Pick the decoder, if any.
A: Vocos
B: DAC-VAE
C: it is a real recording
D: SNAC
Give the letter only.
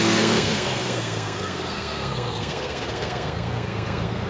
D